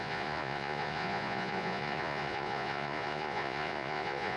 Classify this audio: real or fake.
fake